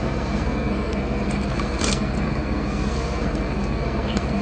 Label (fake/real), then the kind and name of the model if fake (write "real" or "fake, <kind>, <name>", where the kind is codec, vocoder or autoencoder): fake, codec, SNAC